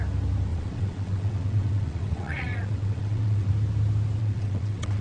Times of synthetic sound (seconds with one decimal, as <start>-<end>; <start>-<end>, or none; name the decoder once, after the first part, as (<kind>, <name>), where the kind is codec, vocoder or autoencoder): 0.5-3.5 (vocoder, WaveNeXt); 4.2-5.0